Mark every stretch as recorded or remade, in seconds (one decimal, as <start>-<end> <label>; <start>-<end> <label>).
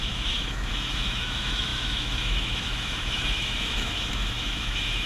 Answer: 0.0-5.1 remade